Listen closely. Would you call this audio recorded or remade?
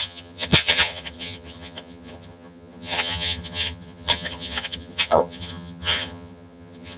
remade